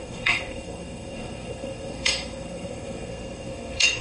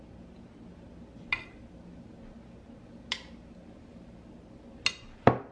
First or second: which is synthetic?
first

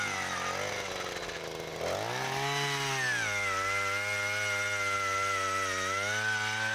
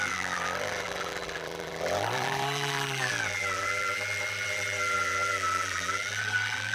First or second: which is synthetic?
second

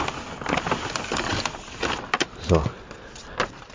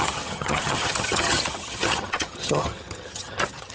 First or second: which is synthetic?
second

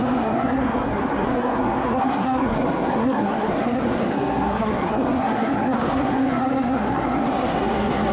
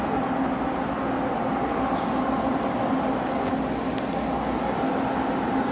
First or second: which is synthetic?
first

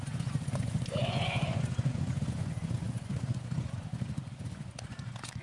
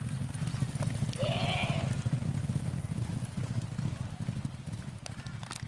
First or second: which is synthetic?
first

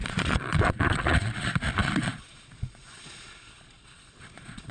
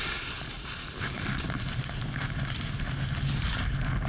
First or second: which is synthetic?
first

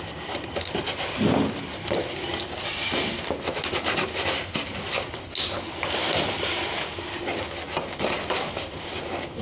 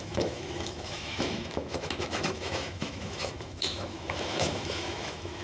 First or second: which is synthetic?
second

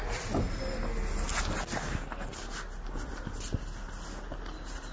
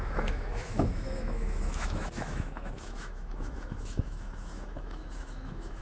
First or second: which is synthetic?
second